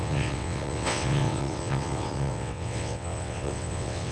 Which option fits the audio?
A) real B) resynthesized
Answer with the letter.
B